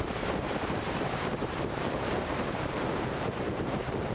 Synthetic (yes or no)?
yes